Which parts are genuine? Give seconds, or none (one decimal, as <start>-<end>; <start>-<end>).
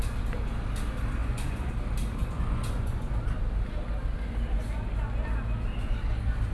0.0-1.2; 1.7-2.2; 3.1-6.5